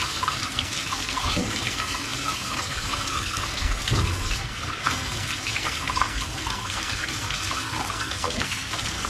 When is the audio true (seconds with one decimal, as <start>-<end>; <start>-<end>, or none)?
none